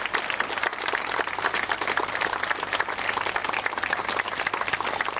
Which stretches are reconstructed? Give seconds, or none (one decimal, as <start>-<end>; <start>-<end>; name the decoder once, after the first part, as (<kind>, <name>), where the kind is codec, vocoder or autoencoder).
none